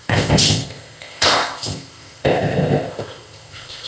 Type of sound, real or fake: fake